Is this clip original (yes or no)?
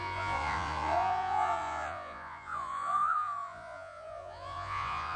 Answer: no